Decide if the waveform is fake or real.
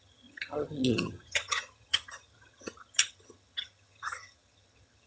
fake